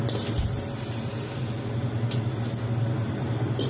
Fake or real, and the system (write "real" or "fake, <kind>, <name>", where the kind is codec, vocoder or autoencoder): real